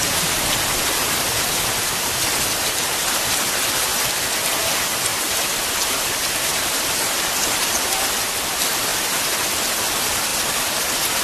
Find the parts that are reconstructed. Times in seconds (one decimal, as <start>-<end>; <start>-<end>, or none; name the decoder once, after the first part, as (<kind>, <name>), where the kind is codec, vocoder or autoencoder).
5.1-7.7 (vocoder, BigVGAN v2)